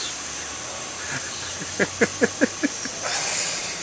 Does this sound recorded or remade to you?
recorded